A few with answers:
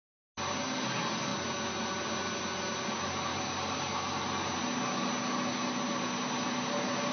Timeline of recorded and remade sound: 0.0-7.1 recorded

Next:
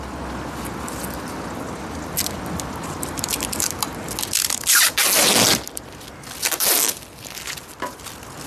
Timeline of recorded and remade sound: 0.0-8.5 recorded

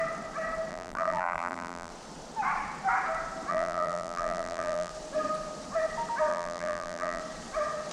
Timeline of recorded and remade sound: 0.0-0.7 recorded; 0.7-1.9 remade; 1.9-3.5 recorded; 3.5-4.9 remade; 4.9-6.3 recorded; 6.3-7.2 remade; 7.2-7.9 recorded

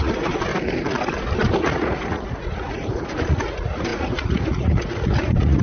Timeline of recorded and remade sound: 0.0-0.5 remade; 0.5-1.6 recorded; 1.6-5.6 remade

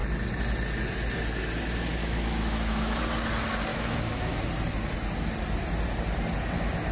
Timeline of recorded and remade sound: 0.0-2.0 recorded; 2.0-3.0 remade; 3.0-3.7 recorded; 3.7-4.4 remade; 4.4-6.9 recorded

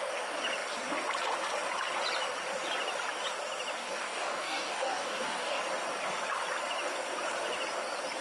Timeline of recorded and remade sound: 0.0-3.8 recorded; 3.8-5.6 remade; 5.6-8.2 recorded

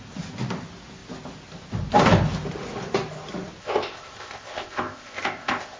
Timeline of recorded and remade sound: 0.0-3.6 recorded; 3.6-5.8 remade